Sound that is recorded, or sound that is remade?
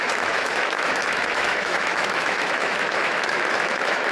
remade